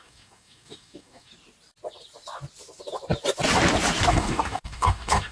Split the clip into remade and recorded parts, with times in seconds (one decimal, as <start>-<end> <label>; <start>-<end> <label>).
0.0-1.3 remade; 1.3-4.1 recorded; 4.1-5.3 remade